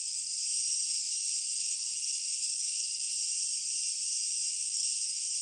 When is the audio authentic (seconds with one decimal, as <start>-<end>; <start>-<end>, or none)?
0.4-1.4; 3.1-4.5